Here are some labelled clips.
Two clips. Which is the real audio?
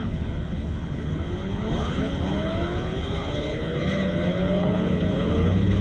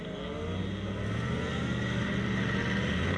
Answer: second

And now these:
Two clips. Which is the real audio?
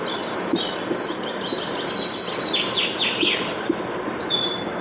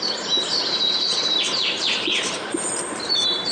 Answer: first